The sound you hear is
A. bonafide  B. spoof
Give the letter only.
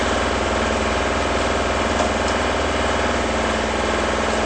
A